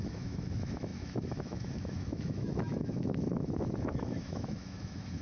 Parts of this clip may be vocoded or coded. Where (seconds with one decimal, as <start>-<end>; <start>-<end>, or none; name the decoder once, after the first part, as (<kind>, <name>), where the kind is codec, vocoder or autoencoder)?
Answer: 0.0-5.2 (autoencoder, DAC-VAE)